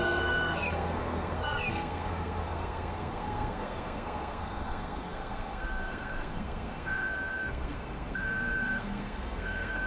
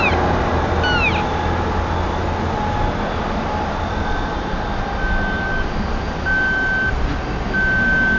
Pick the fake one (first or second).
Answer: first